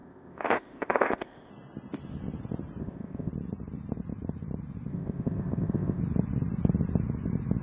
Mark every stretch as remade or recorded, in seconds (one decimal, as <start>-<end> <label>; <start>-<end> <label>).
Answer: 0.0-1.5 remade; 1.5-2.8 recorded; 2.8-3.3 remade; 3.3-4.9 recorded; 4.9-6.0 remade; 6.0-7.6 recorded